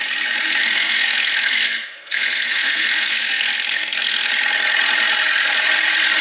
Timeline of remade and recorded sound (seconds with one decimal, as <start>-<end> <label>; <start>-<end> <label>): 0.0-0.6 recorded; 0.6-4.3 remade; 4.3-6.2 recorded